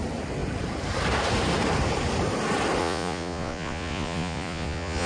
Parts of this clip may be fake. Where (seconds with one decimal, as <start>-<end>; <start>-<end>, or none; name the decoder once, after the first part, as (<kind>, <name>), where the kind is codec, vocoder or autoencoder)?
2.8-5.1 (vocoder, Vocos)